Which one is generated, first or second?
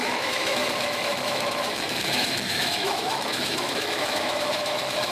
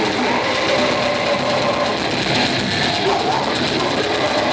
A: first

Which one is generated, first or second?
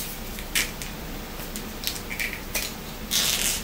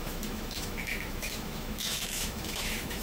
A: second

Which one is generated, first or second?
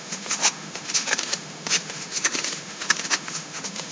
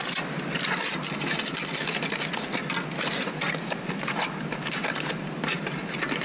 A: first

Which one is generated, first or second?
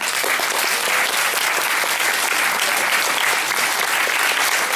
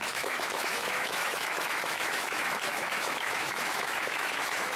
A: second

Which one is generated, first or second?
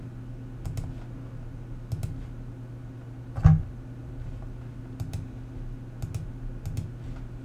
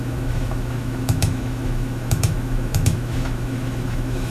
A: second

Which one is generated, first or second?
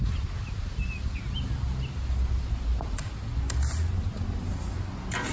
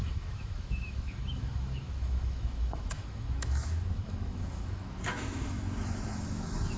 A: second